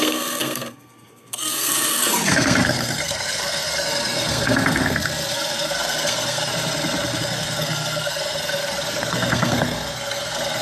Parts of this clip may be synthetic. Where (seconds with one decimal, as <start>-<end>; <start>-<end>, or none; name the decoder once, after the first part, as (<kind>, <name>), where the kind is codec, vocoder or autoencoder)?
0.0-6.5 (codec, SNAC); 7.2-10.6